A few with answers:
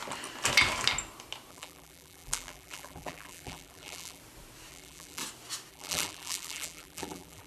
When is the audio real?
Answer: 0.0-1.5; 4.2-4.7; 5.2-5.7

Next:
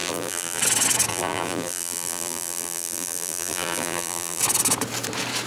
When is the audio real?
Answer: 0.6-1.1; 4.4-5.5

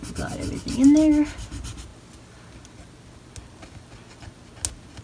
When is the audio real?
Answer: 0.0-5.0